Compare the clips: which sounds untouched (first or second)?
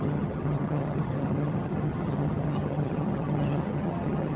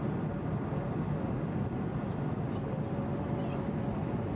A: second